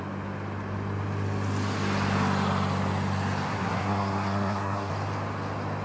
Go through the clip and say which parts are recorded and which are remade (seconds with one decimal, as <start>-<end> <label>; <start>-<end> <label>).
0.0-3.5 recorded; 3.5-4.9 remade; 4.9-5.8 recorded